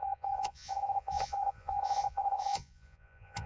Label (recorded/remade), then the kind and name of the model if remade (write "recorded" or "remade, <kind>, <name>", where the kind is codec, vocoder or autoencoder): remade, vocoder, Vocos